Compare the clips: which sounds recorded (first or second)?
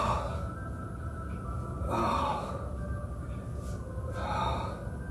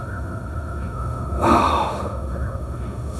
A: first